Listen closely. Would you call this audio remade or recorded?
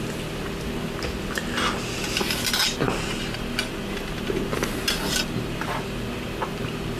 recorded